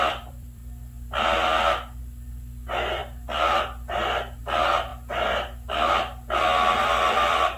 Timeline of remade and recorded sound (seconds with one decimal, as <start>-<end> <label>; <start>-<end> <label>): 0.0-0.6 remade; 0.6-2.0 recorded; 2.0-3.0 remade; 3.0-4.4 recorded; 4.4-4.9 remade; 4.9-6.7 recorded; 6.7-7.6 remade